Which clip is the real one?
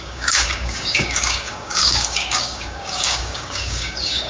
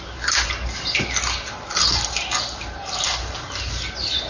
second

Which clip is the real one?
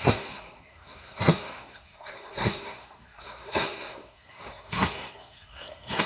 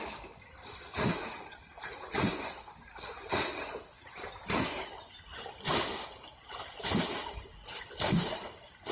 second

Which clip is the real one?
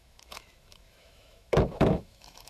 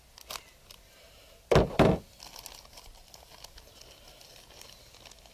second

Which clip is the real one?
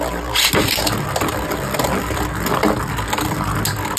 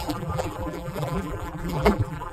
first